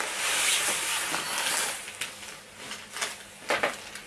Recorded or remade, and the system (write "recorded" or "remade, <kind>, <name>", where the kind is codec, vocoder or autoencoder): recorded